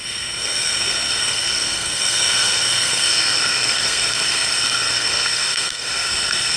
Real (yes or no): no